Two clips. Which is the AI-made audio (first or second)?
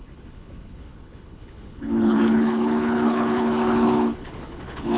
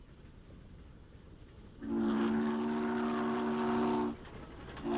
first